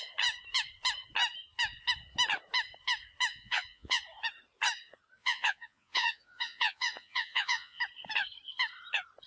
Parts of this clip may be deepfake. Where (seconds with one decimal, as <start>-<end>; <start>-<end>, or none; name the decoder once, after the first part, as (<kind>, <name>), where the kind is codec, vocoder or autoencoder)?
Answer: 3.3-4.0 (vocoder, Vocos); 5.2-7.8